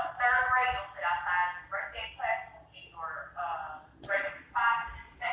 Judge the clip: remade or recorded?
recorded